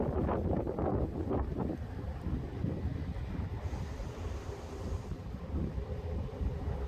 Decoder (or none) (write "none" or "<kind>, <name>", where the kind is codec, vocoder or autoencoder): vocoder, BigVGAN v2